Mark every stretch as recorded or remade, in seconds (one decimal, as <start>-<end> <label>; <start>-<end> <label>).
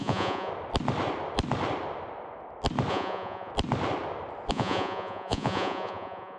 0.0-0.5 remade; 0.5-2.9 recorded; 2.9-3.5 remade; 3.5-4.5 recorded; 4.5-6.4 remade